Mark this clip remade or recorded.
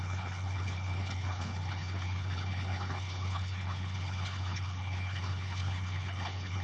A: remade